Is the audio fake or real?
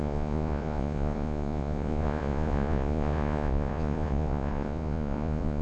fake